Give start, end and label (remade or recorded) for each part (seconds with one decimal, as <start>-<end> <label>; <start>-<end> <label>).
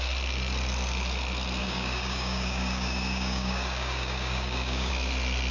0.0-1.6 recorded; 1.6-4.9 remade; 4.9-5.5 recorded